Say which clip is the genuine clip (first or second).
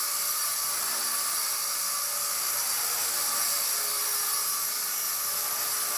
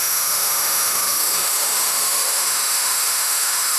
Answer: first